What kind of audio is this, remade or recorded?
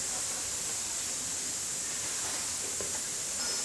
recorded